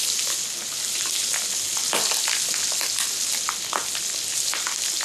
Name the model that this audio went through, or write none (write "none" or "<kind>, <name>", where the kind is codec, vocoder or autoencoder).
none